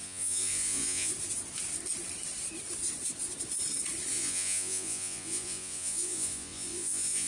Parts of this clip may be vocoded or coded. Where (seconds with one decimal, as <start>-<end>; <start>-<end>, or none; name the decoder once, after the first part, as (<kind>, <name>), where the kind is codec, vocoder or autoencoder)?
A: 0.0-1.1 (vocoder, Vocos); 4.1-7.3